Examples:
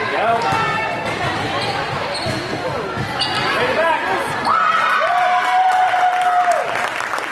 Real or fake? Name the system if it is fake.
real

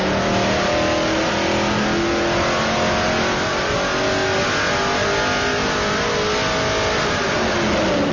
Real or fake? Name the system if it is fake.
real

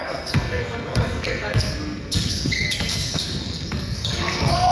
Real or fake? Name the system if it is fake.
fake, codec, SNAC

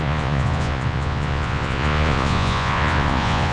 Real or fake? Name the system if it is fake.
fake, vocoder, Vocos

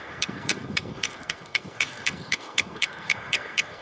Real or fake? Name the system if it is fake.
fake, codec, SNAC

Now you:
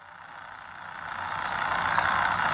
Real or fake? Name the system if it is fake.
real